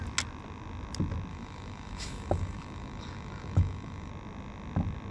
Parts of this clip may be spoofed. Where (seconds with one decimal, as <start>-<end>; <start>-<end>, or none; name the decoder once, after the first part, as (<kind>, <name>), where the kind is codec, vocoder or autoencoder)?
1.3-4.1 (autoencoder, DAC-VAE)